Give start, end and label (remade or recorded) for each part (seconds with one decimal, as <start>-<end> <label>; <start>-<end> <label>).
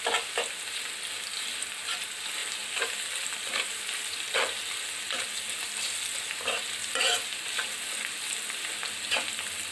0.0-2.4 recorded; 2.4-3.8 remade; 3.8-9.7 recorded